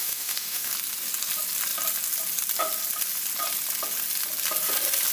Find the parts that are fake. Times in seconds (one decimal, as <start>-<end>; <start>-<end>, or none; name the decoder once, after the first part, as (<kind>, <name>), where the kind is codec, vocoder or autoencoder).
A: 0.0-0.7 (autoencoder, DAC-VAE)